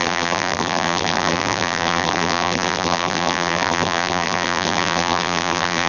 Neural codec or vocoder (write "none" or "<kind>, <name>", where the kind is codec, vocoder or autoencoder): vocoder, BigVGAN v2